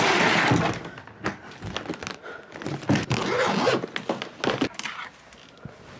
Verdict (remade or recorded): recorded